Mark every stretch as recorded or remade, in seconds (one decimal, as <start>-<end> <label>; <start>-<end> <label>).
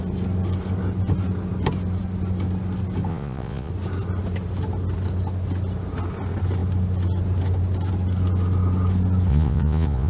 0.0-3.1 recorded; 3.1-3.7 remade; 3.7-9.3 recorded; 9.3-10.1 remade